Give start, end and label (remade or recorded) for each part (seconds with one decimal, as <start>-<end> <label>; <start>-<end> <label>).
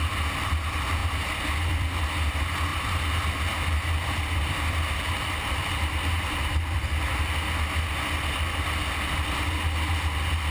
0.0-1.0 recorded; 1.0-2.0 remade; 2.0-2.7 recorded; 2.7-7.1 remade; 7.1-10.5 recorded